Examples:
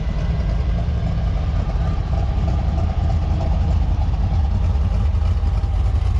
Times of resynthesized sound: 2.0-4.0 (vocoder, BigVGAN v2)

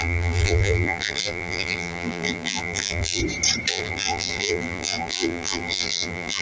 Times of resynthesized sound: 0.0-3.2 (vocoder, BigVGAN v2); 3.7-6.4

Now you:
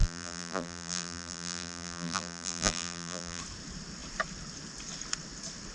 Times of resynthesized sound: 0.0-3.4 (vocoder, BigVGAN v2)

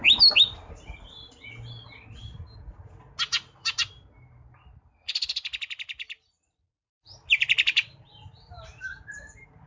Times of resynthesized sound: 3.3-8.5 (vocoder, BigVGAN v2)

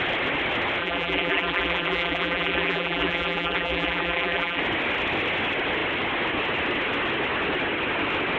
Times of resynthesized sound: 0.8-4.6 (vocoder, BigVGAN v2)

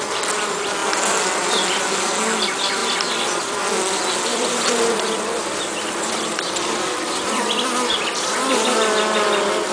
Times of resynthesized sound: 2.8-3.6 (vocoder, BigVGAN v2); 4.3-8.5